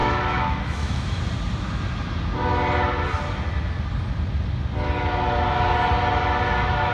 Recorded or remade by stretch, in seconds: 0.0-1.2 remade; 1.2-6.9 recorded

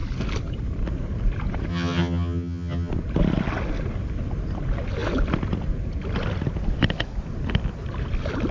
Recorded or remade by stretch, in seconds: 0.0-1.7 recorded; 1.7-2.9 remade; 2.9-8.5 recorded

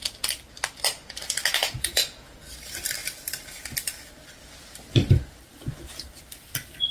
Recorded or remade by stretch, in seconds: 0.0-1.6 recorded; 1.6-2.4 remade; 2.4-6.9 recorded

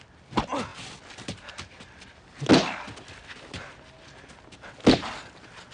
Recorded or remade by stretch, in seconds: 0.0-5.7 recorded

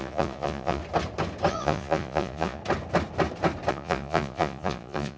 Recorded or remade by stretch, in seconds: 0.0-0.8 remade; 0.8-1.5 recorded; 1.5-2.6 remade; 2.6-3.7 recorded; 3.7-5.2 remade

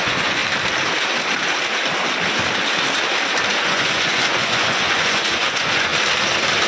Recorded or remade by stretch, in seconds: 0.0-0.4 remade; 0.4-3.6 recorded; 3.6-5.9 remade; 5.9-6.7 recorded